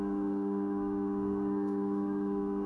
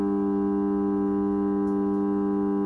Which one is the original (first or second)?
second